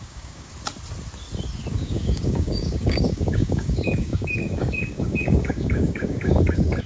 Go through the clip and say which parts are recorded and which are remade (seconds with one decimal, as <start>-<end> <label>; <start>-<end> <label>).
0.0-0.5 remade; 0.5-1.7 recorded; 1.7-6.9 remade